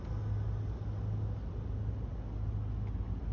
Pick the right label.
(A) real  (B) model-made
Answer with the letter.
A